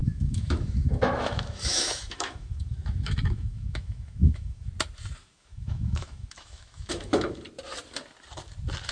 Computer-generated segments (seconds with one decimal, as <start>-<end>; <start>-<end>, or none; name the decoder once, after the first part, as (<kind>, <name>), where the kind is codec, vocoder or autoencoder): 0.0-4.7 (autoencoder, DAC-VAE); 5.2-7.4